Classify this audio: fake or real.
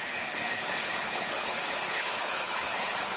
fake